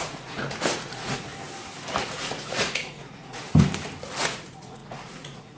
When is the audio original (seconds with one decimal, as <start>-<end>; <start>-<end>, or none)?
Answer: 1.3-2.0; 3.4-4.2